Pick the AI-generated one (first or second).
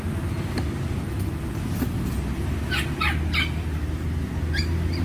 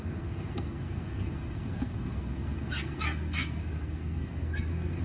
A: second